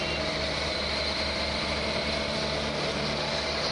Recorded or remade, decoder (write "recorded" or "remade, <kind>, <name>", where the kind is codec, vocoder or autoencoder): recorded